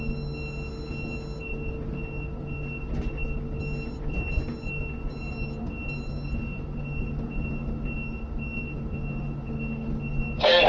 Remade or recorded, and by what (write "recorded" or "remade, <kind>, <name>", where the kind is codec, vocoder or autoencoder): recorded